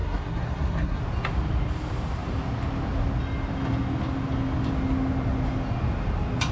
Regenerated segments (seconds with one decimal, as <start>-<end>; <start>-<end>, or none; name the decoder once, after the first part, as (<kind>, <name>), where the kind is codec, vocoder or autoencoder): 0.0-1.0 (codec, SNAC)